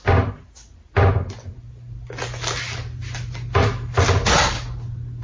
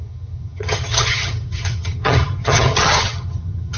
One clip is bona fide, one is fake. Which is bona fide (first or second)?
first